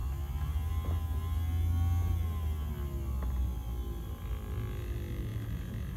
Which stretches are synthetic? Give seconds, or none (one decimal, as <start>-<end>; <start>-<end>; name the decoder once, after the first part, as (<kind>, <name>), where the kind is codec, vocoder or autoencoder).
none